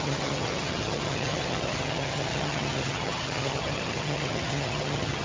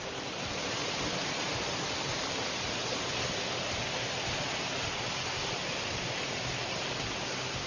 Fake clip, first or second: first